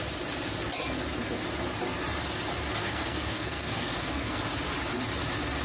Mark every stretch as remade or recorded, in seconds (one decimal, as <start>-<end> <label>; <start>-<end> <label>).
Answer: 0.0-2.8 recorded; 2.8-4.4 remade; 4.4-5.6 recorded